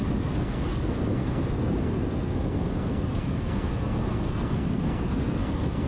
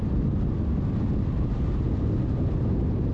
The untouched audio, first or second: second